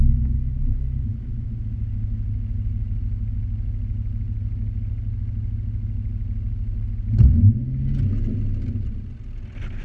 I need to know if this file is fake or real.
real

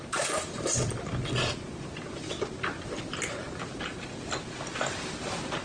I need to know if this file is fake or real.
real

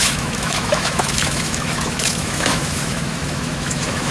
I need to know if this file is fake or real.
fake